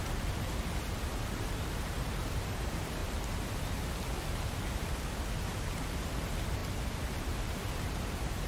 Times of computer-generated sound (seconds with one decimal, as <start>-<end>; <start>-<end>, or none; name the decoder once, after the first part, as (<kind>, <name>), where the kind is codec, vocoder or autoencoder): 0.0-3.0 (vocoder, BigVGAN v2); 4.2-6.6; 7.1-8.5